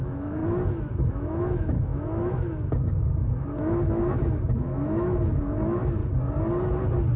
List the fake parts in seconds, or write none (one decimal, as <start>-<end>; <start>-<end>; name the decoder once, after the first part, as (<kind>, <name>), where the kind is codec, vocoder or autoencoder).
0.0-0.4 (autoencoder, DAC-VAE); 1.1-6.0